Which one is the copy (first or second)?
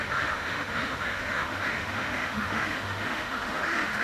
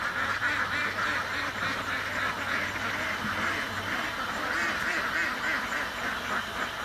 first